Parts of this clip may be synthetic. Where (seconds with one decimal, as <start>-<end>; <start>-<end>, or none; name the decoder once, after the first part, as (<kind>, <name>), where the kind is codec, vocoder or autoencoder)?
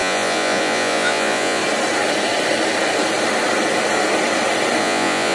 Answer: 0.0-1.6 (vocoder, Vocos); 4.8-5.3